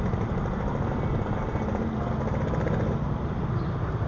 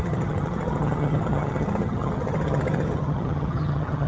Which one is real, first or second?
first